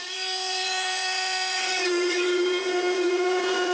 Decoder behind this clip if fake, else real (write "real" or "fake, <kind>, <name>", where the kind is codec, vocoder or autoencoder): fake, vocoder, Vocos